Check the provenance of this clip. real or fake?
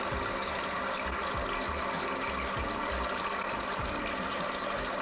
real